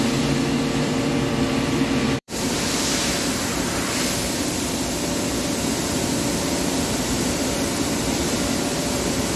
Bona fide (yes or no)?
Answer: no